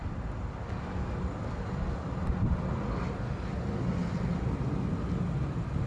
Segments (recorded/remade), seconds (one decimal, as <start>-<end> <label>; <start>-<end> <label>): 0.0-5.9 recorded